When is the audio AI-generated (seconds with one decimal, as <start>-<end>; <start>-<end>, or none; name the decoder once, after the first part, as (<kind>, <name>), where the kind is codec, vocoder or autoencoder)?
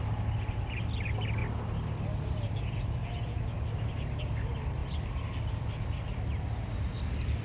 none